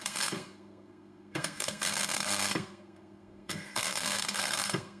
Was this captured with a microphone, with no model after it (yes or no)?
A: no